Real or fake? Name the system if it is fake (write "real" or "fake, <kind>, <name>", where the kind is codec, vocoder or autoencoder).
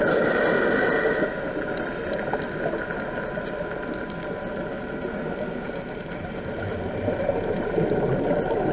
real